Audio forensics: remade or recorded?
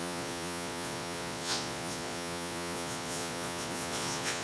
remade